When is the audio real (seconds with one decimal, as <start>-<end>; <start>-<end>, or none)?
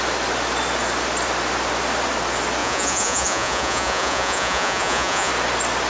0.0-2.6; 5.3-5.9